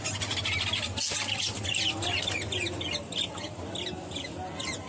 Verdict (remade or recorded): recorded